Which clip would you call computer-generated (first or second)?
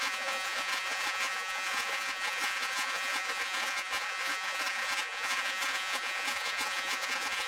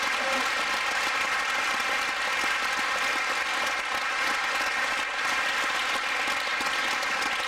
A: first